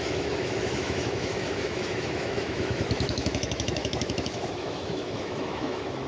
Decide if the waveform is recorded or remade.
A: remade